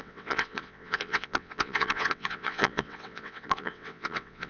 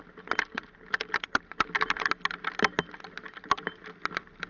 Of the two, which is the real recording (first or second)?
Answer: second